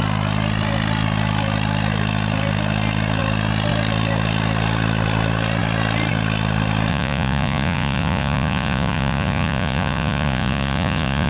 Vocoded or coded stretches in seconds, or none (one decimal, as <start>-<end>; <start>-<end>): 6.9-11.3

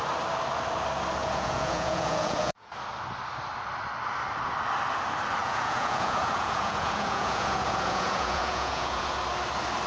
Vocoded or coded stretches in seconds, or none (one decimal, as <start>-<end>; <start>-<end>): 1.2-2.7; 5.4-9.2

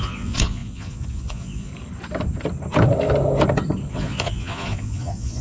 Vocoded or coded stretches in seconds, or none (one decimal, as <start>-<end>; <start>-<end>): 0.0-1.7; 3.9-5.4

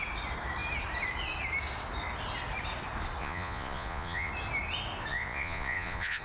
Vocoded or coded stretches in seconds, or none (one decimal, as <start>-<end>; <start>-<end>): 3.2-4.3; 5.1-6.2

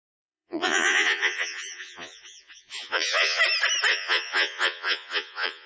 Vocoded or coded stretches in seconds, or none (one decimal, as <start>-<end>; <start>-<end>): 0.0-3.4; 3.9-5.7

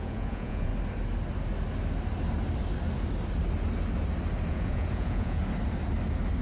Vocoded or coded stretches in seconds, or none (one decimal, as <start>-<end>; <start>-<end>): 0.0-0.7; 4.5-5.4

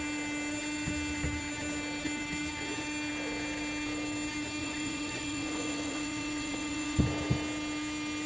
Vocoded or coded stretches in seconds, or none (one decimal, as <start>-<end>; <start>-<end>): 4.6-7.0

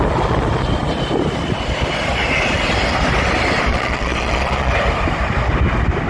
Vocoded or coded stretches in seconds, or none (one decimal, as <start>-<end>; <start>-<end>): 3.7-4.7